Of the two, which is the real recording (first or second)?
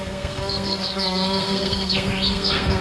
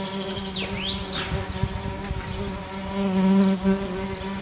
second